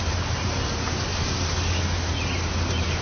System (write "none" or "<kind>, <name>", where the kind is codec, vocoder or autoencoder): none